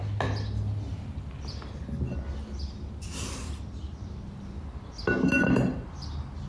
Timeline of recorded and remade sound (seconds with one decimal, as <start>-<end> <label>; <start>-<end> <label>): 0.0-6.5 recorded